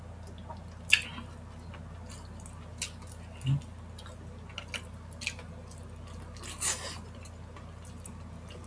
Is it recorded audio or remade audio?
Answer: recorded